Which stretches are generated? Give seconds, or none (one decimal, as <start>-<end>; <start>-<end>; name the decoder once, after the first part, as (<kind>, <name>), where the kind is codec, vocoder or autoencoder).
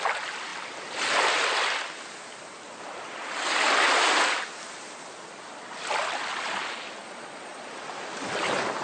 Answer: 7.0-7.7 (vocoder, Vocos)